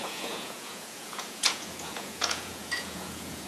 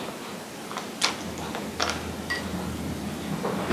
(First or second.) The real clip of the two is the second